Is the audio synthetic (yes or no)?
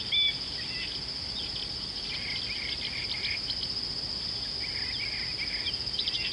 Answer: no